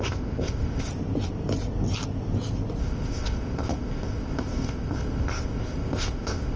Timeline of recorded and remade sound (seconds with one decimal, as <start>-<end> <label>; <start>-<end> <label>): 0.0-0.9 remade; 0.9-2.8 recorded; 2.8-6.6 remade